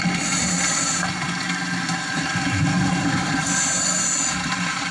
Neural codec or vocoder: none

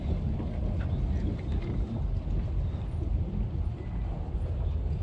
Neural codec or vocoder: none